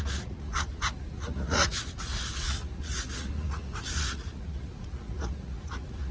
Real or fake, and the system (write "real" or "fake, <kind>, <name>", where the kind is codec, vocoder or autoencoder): fake, vocoder, Vocos